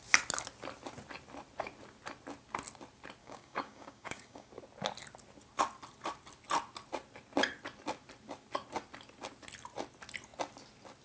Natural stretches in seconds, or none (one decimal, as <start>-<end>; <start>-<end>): 0.0-3.2; 4.5-11.0